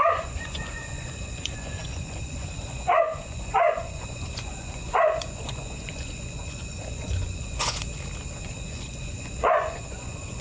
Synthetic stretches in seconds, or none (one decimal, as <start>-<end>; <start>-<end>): 0.0-7.9; 8.4-10.4